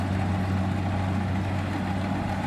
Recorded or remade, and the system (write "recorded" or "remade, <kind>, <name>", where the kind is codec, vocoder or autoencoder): recorded